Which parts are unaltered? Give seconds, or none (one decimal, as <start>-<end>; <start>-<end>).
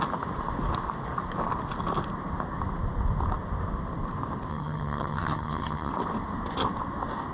0.0-4.5; 5.9-7.3